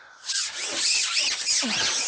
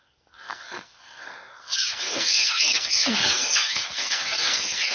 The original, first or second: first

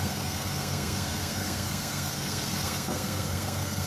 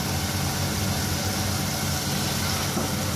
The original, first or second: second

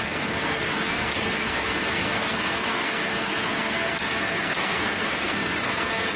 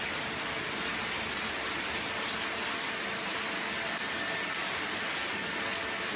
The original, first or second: second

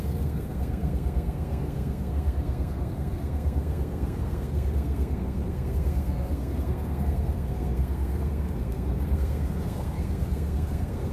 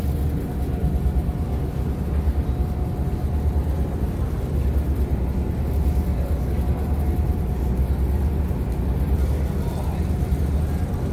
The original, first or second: second